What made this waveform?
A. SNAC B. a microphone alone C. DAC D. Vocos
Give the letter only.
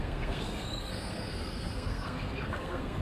A